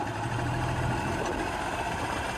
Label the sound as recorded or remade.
recorded